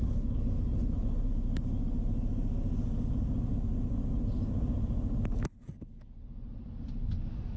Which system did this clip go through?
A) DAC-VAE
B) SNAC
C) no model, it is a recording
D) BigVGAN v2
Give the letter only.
C